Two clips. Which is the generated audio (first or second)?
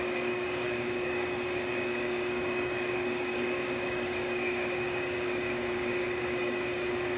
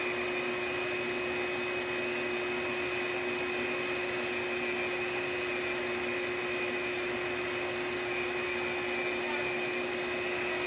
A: first